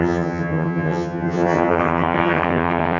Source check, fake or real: fake